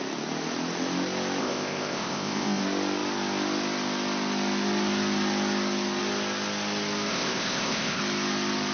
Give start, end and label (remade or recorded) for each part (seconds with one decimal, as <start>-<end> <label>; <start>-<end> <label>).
0.0-1.4 recorded; 1.4-2.6 remade; 2.6-7.1 recorded; 7.1-8.0 remade; 8.0-8.7 recorded